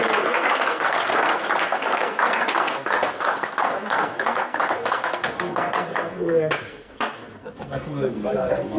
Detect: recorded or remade remade